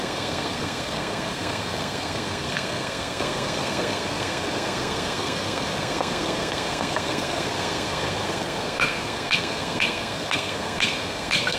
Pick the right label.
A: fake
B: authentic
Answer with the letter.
A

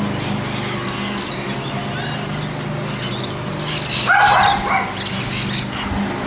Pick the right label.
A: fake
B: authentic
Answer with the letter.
B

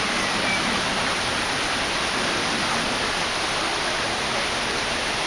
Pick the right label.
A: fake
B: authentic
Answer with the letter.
B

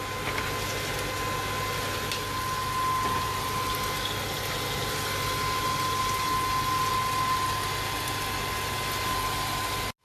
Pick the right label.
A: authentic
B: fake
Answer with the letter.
A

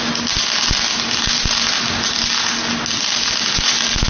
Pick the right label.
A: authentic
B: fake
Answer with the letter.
A